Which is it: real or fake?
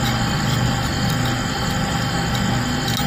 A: real